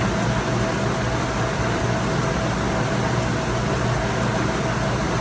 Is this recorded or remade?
recorded